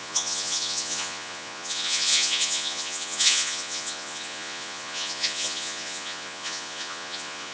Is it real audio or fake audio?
fake